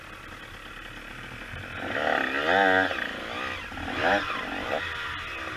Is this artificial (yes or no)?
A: no